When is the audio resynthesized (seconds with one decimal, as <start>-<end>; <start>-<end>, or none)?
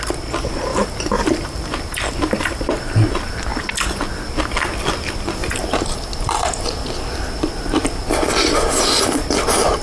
0.7-2.7; 5.4-7.8